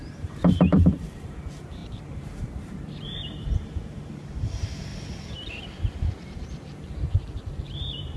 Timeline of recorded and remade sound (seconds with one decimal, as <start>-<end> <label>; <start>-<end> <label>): 0.0-4.9 remade; 4.9-6.1 recorded; 6.1-8.2 remade

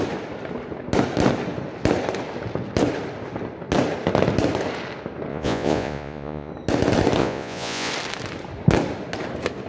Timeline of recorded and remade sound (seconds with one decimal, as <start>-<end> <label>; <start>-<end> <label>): 0.0-5.3 recorded; 5.3-6.5 remade; 6.5-7.2 recorded; 7.2-7.9 remade; 7.9-9.7 recorded

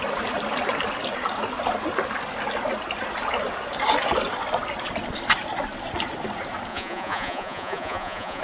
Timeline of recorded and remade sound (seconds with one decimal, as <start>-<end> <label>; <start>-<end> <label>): 0.0-6.7 recorded; 6.7-8.4 remade

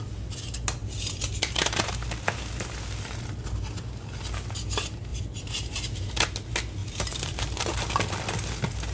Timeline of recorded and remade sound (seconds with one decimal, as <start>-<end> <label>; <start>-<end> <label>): 0.0-0.8 recorded; 0.8-1.9 remade; 1.9-5.1 recorded; 5.1-6.1 remade; 6.1-6.8 recorded; 6.8-7.9 remade; 7.9-8.9 recorded

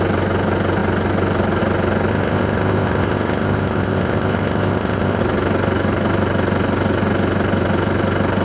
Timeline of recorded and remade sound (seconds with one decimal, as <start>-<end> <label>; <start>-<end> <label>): 0.0-2.1 recorded; 2.1-5.2 remade; 5.2-8.4 recorded

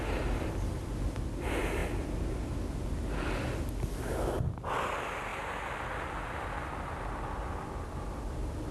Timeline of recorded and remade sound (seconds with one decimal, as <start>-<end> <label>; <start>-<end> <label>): 0.0-8.7 recorded

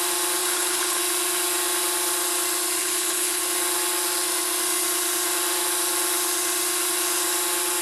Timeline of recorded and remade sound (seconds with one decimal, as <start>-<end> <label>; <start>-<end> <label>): 0.0-0.4 recorded; 0.4-1.0 remade; 1.0-2.8 recorded; 2.8-3.4 remade; 3.4-7.8 recorded